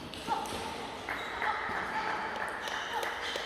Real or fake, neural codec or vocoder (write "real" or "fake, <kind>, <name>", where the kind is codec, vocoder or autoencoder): fake, vocoder, BigVGAN v2